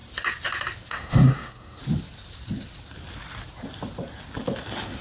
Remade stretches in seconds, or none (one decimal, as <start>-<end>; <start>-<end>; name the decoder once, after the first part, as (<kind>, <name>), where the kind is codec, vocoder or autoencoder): 0.9-1.8 (codec, SNAC)